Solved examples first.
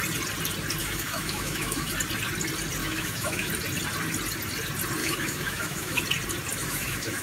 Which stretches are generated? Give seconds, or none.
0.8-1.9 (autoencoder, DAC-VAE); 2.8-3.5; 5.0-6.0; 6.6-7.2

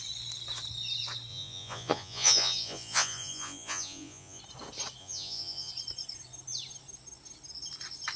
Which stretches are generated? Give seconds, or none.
1.3-4.4 (vocoder, Vocos); 5.0-5.7